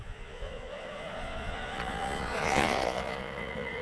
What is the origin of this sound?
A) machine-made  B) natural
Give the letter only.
A